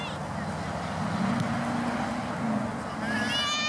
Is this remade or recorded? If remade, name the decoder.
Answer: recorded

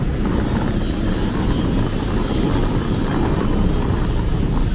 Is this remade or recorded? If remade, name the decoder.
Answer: recorded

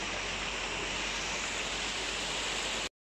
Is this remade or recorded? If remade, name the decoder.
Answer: recorded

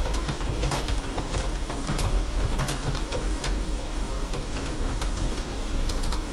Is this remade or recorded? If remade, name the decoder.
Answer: remade, codec, DAC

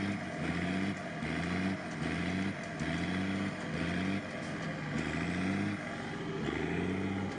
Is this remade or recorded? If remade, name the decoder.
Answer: recorded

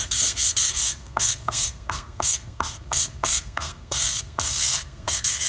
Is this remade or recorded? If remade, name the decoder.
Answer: remade, codec, SNAC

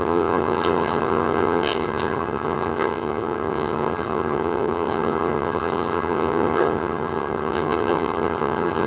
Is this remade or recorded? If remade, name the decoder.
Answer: remade, vocoder, HiFi-GAN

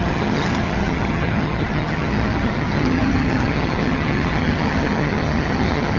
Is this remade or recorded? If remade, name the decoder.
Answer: remade, vocoder, HiFi-GAN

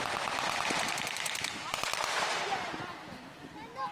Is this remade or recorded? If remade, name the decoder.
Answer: recorded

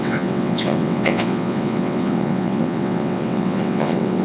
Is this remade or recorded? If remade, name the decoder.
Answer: remade, vocoder, WaveNeXt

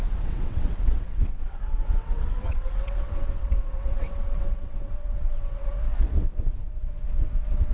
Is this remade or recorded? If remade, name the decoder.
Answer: remade, vocoder, WaveNeXt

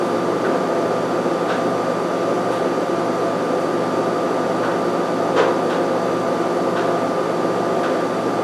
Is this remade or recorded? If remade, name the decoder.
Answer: recorded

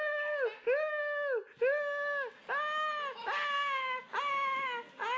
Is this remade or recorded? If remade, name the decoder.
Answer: recorded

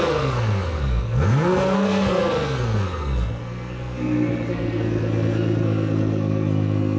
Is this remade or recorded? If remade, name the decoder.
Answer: remade, codec, SNAC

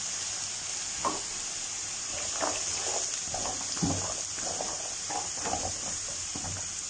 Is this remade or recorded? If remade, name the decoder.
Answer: recorded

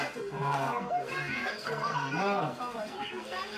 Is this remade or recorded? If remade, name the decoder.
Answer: remade, codec, SNAC